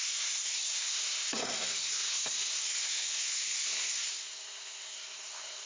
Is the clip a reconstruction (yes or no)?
yes